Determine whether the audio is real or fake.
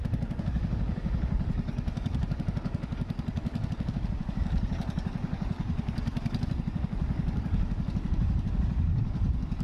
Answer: fake